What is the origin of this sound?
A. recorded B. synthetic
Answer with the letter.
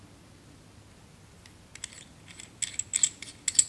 A